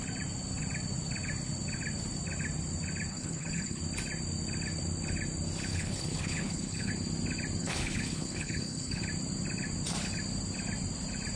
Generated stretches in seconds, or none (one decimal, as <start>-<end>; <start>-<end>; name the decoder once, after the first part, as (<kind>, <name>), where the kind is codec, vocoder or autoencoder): 3.1-3.8 (codec, HILCodec); 5.7-6.9; 7.6-9.0